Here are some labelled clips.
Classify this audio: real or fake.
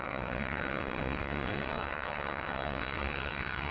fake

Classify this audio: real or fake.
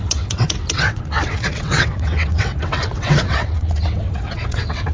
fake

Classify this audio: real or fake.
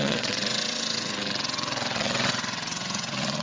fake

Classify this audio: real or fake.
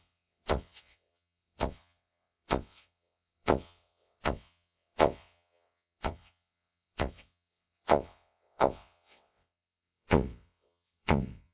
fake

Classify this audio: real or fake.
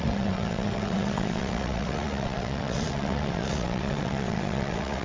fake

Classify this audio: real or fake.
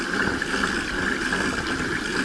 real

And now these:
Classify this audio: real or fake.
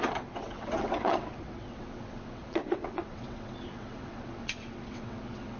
fake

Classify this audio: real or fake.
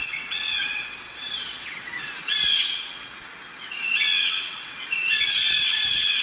fake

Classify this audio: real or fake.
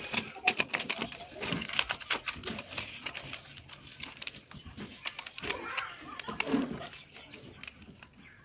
real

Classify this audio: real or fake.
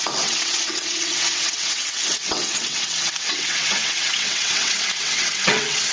fake